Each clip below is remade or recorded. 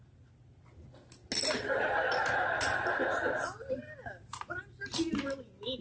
recorded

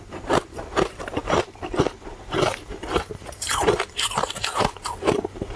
remade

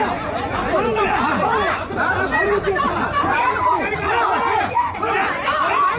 remade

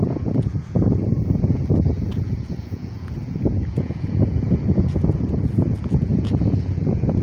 remade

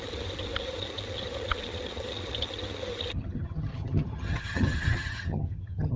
remade